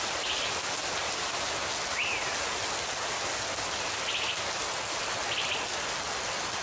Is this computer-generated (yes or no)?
no